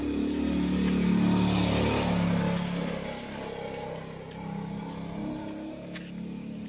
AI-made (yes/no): no